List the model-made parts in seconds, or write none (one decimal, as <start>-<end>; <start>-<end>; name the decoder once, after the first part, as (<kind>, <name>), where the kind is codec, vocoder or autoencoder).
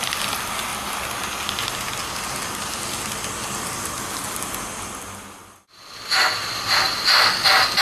none